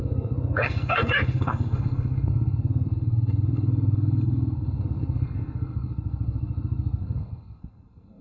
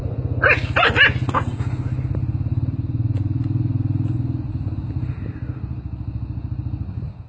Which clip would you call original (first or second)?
second